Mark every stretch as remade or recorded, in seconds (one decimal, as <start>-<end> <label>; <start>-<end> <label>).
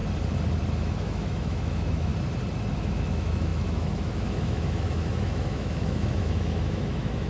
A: 0.0-0.8 recorded; 0.8-2.1 remade; 2.1-2.7 recorded; 2.7-7.3 remade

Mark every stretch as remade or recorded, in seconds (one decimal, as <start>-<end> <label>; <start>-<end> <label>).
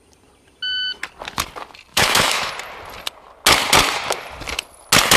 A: 0.0-1.9 recorded; 1.9-2.5 remade; 2.5-5.2 recorded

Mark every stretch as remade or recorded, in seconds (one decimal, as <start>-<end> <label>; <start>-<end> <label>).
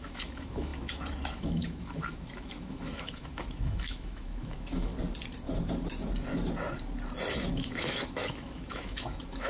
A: 0.0-4.9 remade; 4.9-7.5 recorded; 7.5-9.5 remade